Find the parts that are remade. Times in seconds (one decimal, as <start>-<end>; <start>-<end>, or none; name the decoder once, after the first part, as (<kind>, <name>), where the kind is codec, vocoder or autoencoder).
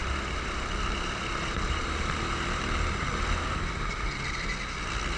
0.0-3.1 (vocoder, BigVGAN v2)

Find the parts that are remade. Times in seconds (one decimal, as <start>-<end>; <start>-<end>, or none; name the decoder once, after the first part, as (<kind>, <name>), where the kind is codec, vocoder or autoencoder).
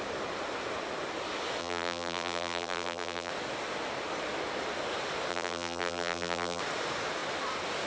1.6-3.3 (vocoder, BigVGAN v2); 5.3-6.6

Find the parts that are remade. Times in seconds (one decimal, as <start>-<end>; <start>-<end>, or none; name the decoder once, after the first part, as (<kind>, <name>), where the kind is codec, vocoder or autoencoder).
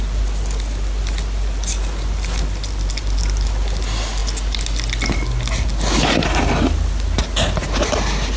none